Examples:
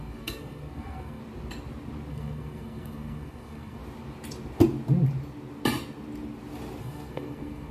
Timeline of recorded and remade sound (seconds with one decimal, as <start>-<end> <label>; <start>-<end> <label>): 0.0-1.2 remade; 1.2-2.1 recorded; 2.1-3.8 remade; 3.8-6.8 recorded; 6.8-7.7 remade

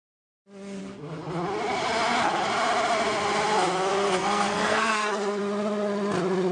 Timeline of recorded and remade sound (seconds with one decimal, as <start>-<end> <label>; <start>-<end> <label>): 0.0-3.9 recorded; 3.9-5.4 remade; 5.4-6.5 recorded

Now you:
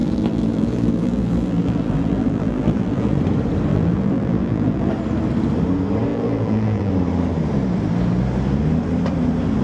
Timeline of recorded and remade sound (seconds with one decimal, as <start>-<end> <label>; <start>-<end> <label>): 0.0-3.2 remade; 3.2-3.7 recorded; 3.7-4.9 remade; 4.9-6.1 recorded; 6.1-6.9 remade; 6.9-9.6 recorded

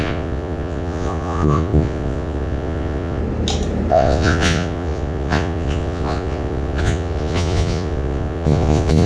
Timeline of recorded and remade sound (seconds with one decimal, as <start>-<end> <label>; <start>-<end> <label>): 0.0-3.2 remade; 3.2-3.9 recorded; 3.9-9.1 remade